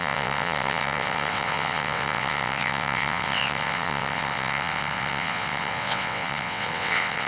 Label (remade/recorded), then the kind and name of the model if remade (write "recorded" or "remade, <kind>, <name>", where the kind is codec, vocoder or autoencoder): remade, vocoder, WaveNeXt